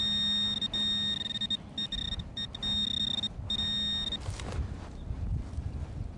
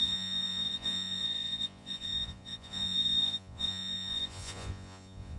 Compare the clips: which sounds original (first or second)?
first